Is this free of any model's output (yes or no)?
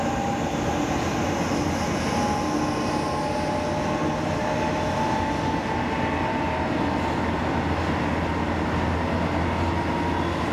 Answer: yes